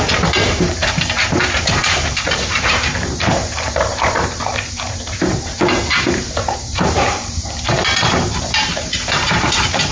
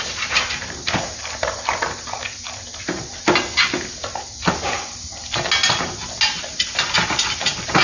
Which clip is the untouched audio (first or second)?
second